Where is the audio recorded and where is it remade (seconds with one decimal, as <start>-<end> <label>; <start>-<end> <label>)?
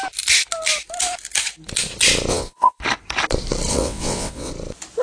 0.0-2.3 recorded; 2.3-2.8 remade; 2.8-3.7 recorded; 3.7-4.5 remade; 4.5-5.0 recorded